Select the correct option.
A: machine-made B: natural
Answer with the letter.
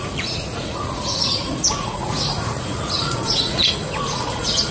A